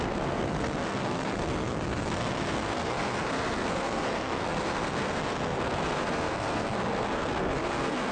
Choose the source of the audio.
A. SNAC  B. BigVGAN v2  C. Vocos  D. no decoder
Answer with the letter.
A